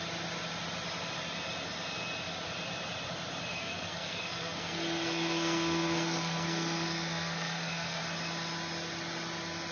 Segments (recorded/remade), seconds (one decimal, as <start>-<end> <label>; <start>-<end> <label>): 0.0-3.5 recorded; 3.5-8.0 remade; 8.0-9.7 recorded